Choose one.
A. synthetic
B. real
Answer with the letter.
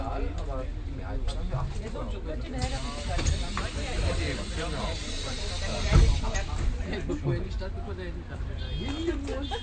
B